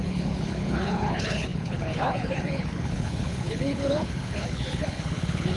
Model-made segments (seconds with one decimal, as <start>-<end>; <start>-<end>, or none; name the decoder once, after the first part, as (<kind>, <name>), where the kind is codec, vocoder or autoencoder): 0.0-5.6 (codec, HILCodec)